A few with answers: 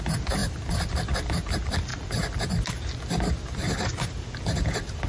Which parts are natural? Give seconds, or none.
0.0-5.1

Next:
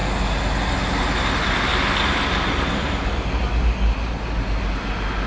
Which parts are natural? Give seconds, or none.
0.0-5.3

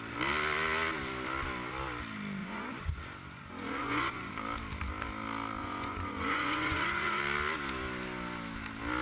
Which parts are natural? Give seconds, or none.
0.0-2.4; 4.3-5.6; 7.2-9.0

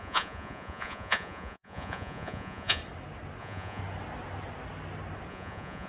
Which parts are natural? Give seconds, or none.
2.8-3.4; 3.8-5.3

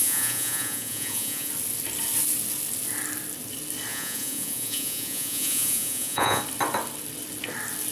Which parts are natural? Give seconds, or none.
1.5-3.9; 6.4-7.9

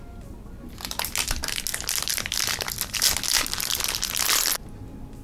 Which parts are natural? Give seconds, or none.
0.0-5.2